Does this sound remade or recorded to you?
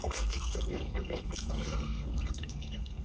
remade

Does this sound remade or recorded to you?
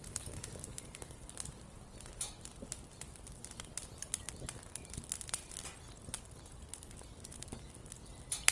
recorded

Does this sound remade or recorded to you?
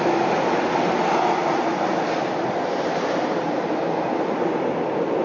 recorded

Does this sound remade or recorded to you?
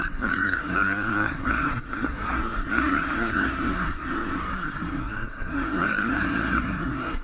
remade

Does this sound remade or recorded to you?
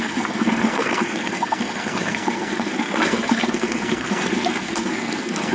remade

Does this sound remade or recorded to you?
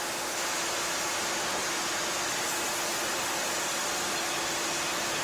recorded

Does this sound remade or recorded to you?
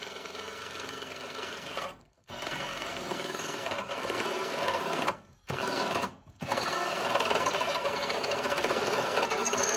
remade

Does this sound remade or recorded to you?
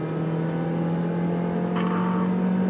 recorded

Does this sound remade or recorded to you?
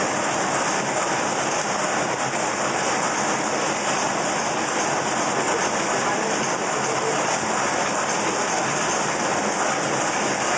recorded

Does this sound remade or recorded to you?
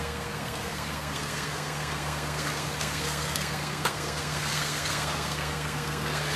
remade